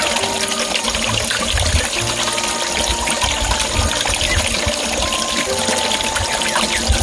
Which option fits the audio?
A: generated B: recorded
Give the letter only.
B